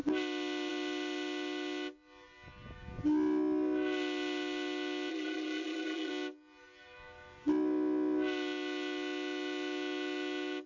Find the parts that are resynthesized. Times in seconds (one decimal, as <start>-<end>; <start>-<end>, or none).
5.1-6.1